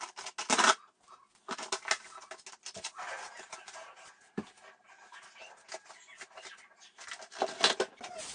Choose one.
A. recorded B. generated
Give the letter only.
A